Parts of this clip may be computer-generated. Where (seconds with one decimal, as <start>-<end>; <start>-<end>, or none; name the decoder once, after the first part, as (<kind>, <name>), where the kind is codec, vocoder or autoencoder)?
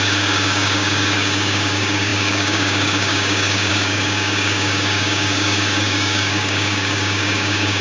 0.0-7.8 (codec, DAC)